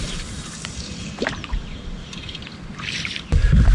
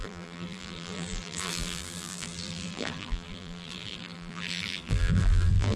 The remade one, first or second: second